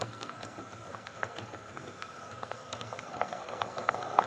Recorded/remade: remade